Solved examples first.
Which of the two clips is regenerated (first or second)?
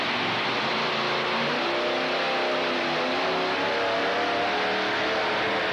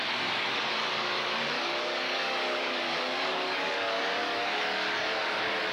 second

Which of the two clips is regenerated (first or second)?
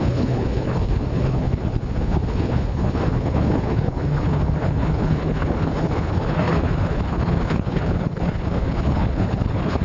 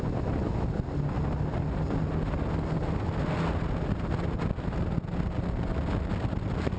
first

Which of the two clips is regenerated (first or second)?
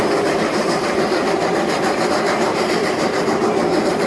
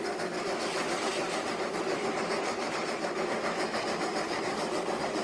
first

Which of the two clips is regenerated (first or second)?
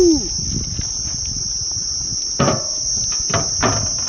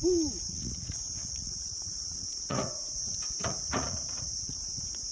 second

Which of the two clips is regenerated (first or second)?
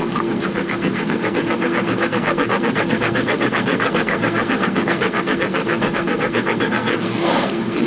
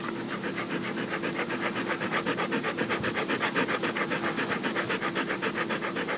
first